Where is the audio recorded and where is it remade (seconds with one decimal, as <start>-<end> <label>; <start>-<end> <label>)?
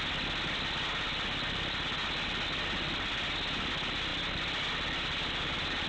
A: 0.0-5.9 recorded